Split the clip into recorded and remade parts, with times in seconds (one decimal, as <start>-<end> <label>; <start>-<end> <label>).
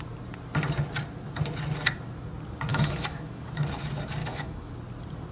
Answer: 0.0-2.7 recorded; 2.7-3.5 remade; 3.5-4.2 recorded; 4.2-4.7 remade; 4.7-5.3 recorded